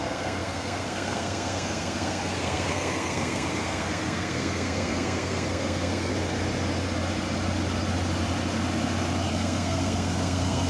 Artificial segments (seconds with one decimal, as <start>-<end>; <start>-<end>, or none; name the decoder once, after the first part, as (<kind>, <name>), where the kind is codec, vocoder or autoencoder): 0.0-6.1 (codec, SNAC); 9.3-10.7

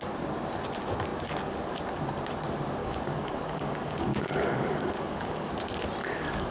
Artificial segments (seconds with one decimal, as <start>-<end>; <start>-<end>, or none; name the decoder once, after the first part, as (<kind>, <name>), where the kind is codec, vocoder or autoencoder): 2.8-5.5 (codec, DAC); 6.0-6.5

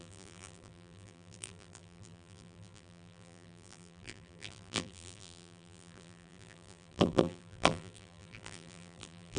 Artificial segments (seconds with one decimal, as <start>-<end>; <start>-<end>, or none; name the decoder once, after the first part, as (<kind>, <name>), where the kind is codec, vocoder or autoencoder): 0.0-9.4 (vocoder, BigVGAN v2)

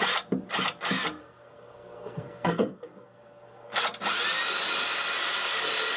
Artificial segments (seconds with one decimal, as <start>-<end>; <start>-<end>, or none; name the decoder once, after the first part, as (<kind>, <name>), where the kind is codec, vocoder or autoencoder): 1.2-3.8 (codec, SNAC)

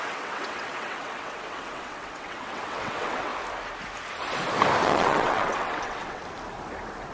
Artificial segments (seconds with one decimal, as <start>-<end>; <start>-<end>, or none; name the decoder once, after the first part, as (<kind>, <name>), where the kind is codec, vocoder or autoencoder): 0.0-3.3 (vocoder, WaveNeXt); 4.8-6.2

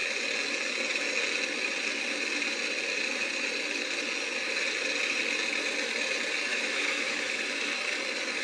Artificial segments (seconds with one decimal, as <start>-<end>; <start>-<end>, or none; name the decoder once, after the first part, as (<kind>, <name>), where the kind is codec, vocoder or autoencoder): 6.5-7.4 (autoencoder, DAC-VAE)

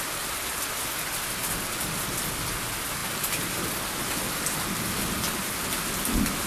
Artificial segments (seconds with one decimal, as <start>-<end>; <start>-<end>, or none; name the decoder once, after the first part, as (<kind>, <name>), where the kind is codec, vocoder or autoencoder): none